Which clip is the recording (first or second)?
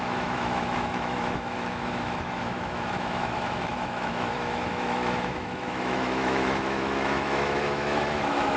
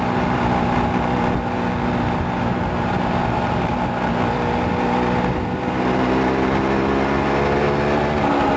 second